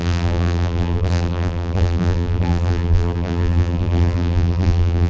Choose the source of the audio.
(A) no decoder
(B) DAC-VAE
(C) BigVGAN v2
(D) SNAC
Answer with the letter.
C